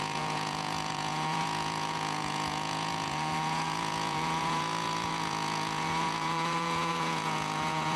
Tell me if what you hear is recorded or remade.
remade